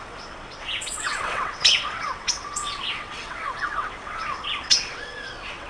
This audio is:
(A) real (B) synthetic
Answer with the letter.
B